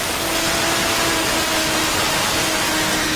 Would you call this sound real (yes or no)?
yes